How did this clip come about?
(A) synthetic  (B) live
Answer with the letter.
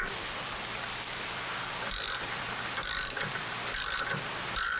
A